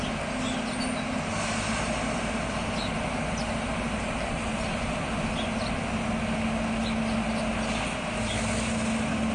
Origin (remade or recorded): recorded